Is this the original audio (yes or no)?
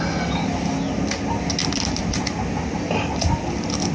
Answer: yes